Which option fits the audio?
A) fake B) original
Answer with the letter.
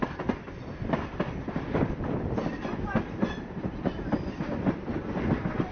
A